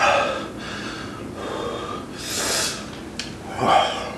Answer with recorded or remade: recorded